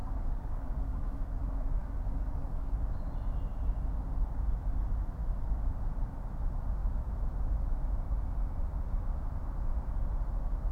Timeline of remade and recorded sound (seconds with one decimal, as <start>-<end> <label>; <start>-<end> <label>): 0.0-1.4 remade; 1.4-1.8 recorded; 1.8-3.0 remade; 3.0-10.7 recorded